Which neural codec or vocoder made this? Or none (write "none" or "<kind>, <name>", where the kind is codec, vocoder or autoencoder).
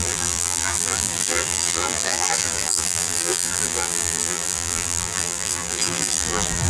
vocoder, BigVGAN v2